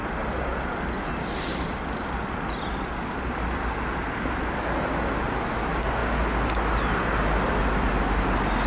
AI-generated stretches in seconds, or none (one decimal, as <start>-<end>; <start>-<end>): none